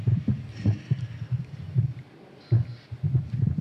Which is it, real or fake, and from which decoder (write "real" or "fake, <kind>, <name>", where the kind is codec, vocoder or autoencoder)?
fake, vocoder, BigVGAN v2